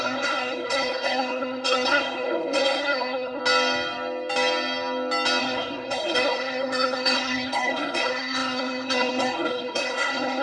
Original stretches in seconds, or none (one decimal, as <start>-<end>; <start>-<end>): 3.4-5.4

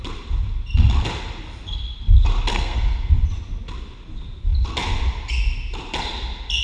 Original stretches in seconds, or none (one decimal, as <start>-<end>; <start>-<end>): 0.0-2.5; 3.1-6.6